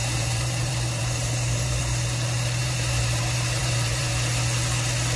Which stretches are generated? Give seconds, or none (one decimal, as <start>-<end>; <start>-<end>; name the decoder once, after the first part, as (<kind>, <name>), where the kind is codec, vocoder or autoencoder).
0.0-1.8 (vocoder, BigVGAN v2); 2.6-4.1